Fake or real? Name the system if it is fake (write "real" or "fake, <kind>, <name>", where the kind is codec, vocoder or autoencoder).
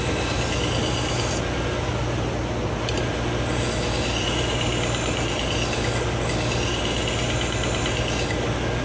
real